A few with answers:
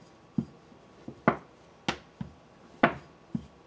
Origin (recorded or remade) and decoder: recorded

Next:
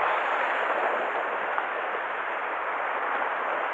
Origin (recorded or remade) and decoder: recorded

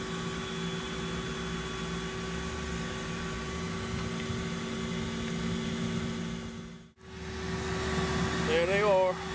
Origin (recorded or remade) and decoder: recorded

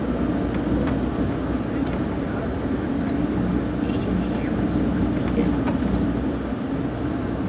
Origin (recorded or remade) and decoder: recorded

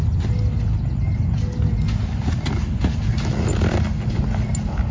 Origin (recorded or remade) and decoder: recorded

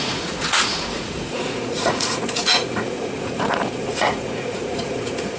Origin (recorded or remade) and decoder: remade, vocoder, Vocos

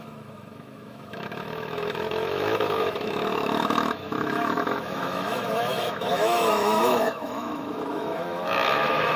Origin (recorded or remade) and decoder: remade, autoencoder, DAC-VAE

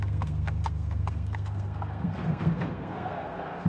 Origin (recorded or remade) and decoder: remade, codec, SNAC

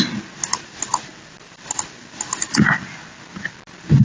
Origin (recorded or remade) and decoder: recorded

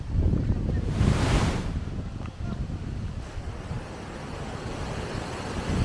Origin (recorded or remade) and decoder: recorded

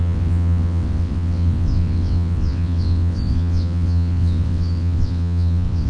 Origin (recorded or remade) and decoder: remade, vocoder, WaveNeXt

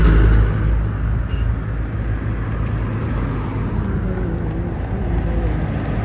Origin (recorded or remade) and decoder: recorded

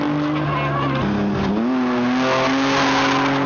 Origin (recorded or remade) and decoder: recorded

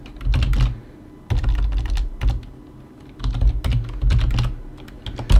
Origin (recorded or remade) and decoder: recorded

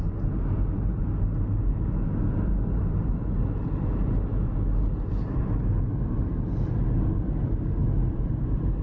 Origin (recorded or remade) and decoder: recorded